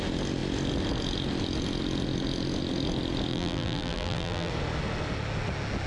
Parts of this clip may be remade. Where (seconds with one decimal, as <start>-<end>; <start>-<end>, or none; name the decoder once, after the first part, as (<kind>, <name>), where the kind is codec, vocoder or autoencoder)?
3.3-4.5 (vocoder, BigVGAN v2)